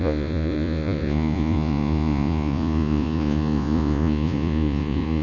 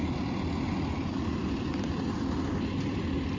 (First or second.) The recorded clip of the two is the second